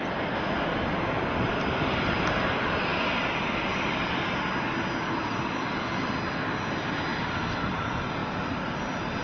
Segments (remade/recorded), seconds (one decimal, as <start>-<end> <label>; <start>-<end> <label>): 0.0-9.2 recorded